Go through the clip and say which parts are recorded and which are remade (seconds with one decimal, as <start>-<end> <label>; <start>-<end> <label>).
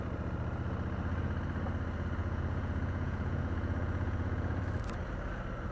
0.0-2.2 recorded; 2.2-4.6 remade; 4.6-5.7 recorded